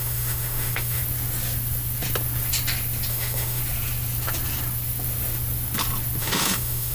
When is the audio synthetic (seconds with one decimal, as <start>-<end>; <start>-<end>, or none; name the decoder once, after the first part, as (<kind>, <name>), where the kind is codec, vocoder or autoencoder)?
0.0-1.0 (autoencoder, DAC-VAE); 3.1-3.6; 6.2-6.9